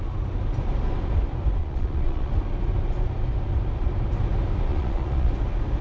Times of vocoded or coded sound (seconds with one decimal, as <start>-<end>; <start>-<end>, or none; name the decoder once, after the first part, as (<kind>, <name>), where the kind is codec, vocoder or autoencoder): 1.6-2.3 (vocoder, Vocos); 4.7-5.3